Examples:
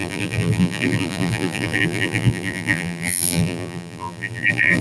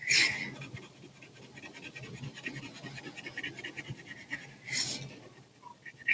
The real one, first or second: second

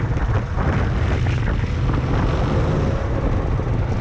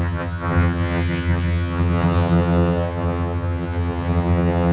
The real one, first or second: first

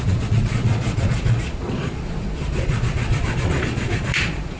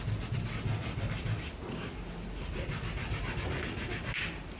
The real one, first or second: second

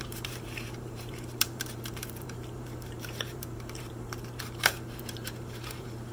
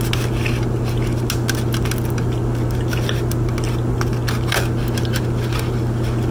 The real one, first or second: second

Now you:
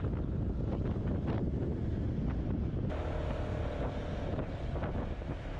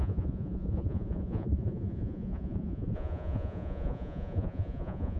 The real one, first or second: first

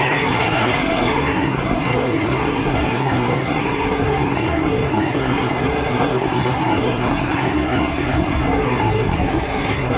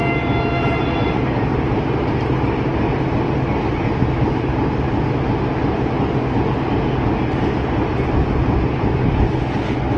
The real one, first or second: second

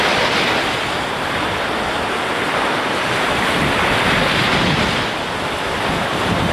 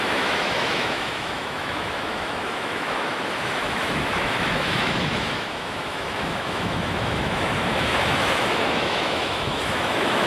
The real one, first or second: first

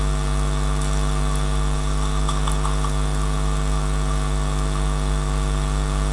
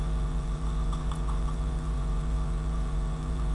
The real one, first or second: first